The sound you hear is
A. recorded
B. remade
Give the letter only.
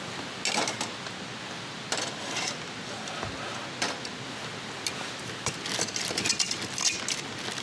A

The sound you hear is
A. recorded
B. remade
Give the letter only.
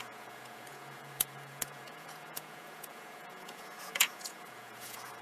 B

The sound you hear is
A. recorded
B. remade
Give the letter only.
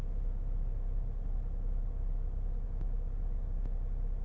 A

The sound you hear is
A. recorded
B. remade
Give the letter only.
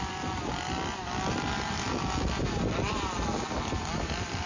A